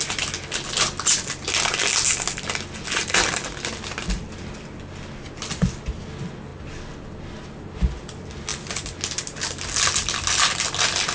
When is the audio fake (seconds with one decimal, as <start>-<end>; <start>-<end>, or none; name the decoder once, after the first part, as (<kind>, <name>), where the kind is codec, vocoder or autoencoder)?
none